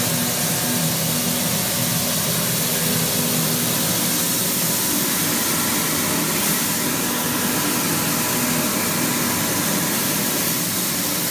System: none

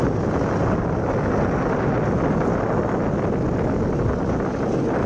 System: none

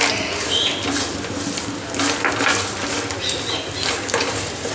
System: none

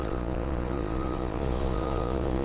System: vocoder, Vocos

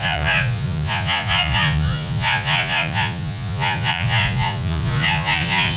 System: vocoder, Vocos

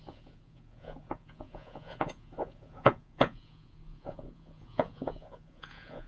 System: vocoder, Vocos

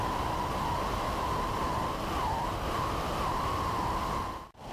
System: none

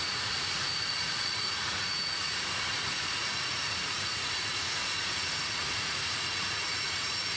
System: vocoder, Vocos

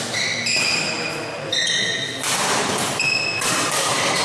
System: none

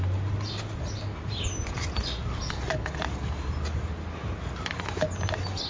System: none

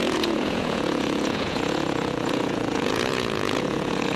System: vocoder, Vocos